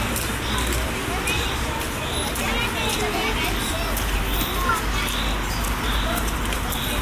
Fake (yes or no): no